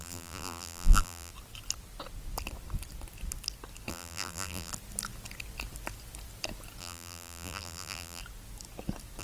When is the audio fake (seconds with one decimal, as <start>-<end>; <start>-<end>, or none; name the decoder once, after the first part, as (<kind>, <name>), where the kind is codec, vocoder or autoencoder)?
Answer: 0.0-1.3 (vocoder, BigVGAN v2); 3.9-4.7; 6.8-8.2